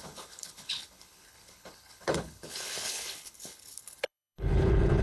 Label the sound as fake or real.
fake